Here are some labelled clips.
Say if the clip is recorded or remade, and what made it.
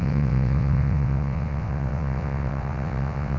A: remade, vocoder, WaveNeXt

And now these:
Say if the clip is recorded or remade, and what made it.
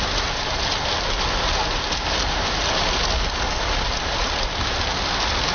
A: recorded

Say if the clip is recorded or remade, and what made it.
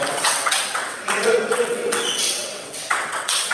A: remade, vocoder, WaveNeXt